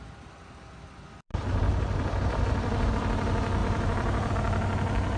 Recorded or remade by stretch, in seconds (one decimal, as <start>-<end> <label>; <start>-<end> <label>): 0.0-1.3 recorded; 1.3-2.9 remade; 2.9-3.6 recorded; 3.6-4.3 remade; 4.3-5.2 recorded